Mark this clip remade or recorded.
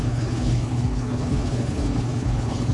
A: remade